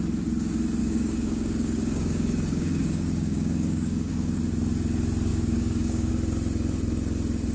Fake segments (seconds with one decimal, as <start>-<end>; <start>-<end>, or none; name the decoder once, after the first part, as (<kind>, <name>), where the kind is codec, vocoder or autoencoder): 0.8-4.4 (codec, DAC); 5.3-6.1